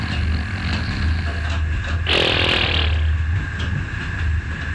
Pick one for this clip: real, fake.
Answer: real